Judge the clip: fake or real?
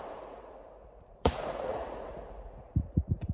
fake